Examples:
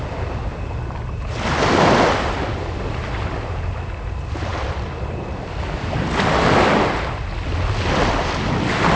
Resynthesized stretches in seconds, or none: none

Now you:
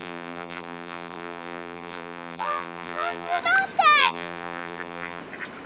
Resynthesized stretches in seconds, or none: 0.0-3.4 (vocoder, BigVGAN v2); 4.0-5.2

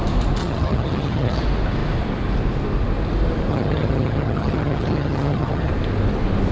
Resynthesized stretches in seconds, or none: 0.4-1.4 (vocoder, HiFi-GAN); 3.5-5.7

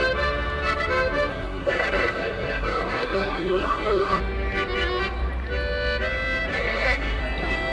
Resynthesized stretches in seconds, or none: 1.3-4.2 (codec, SNAC); 6.5-7.2

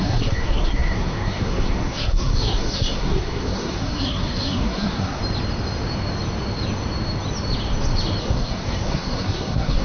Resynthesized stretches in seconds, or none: 0.0-5.2 (codec, SNAC); 8.2-9.8

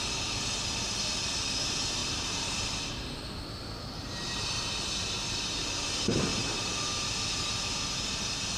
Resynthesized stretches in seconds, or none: 2.0-5.7 (vocoder, BigVGAN v2); 6.3-6.8

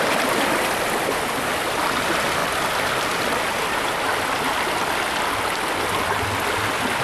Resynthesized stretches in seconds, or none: none